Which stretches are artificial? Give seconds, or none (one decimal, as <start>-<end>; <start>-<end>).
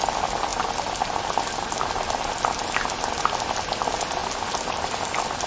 none